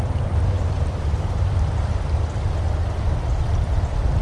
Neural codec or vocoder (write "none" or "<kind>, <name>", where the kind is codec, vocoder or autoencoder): none